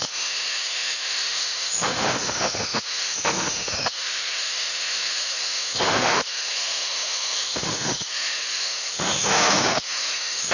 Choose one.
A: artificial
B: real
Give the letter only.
A